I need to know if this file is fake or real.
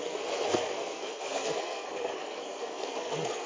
fake